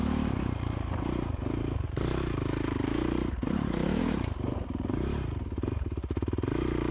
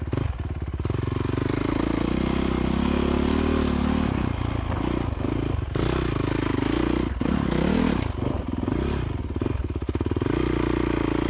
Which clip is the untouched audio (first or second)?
second